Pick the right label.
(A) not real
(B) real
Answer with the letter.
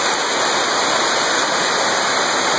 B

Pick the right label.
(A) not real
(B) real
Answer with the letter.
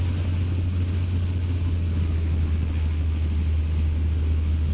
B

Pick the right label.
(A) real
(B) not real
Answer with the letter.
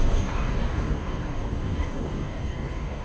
B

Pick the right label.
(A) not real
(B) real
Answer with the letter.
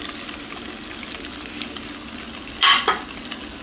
B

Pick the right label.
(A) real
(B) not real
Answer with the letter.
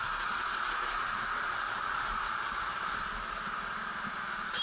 A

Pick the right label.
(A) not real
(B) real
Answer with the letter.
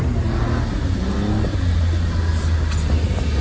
B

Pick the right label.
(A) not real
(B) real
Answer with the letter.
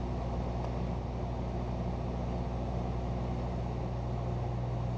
B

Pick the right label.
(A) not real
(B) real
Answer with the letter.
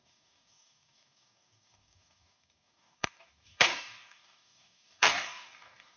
A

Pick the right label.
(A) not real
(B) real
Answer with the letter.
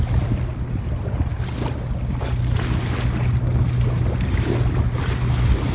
B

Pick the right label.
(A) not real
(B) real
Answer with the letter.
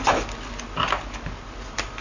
B